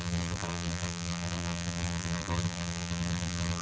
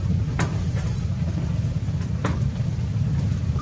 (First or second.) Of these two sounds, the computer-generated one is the first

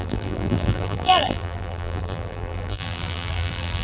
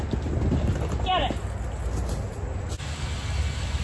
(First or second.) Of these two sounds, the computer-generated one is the first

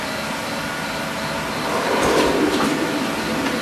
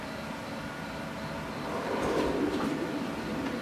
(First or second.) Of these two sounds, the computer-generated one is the second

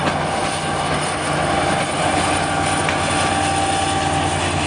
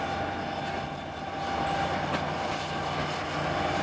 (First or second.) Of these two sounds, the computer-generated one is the first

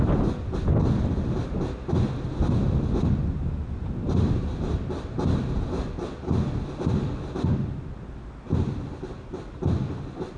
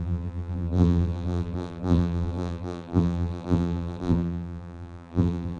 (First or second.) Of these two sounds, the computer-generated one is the second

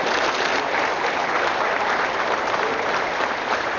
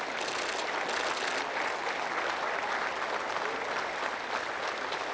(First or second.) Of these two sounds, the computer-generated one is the first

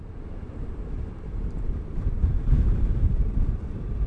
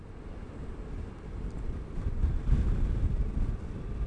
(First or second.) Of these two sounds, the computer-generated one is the first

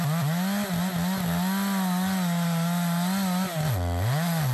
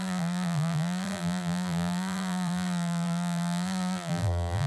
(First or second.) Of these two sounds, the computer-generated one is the second